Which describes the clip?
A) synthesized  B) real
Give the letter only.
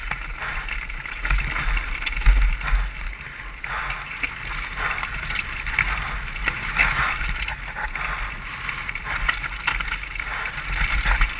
B